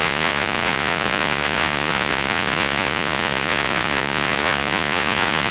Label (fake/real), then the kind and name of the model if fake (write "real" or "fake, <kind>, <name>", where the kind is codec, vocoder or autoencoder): fake, vocoder, Vocos